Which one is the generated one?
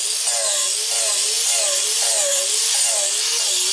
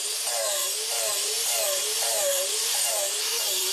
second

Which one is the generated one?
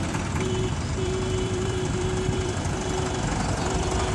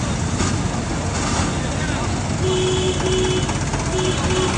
first